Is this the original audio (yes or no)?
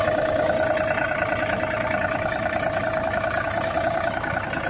yes